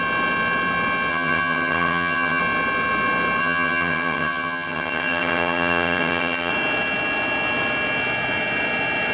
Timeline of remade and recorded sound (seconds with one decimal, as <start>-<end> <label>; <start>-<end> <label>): 0.0-1.1 recorded; 1.1-2.4 remade; 2.4-3.4 recorded; 3.4-6.5 remade; 6.5-9.1 recorded